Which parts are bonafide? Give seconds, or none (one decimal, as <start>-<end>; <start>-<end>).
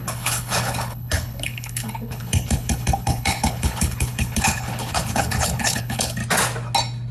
6.2-7.1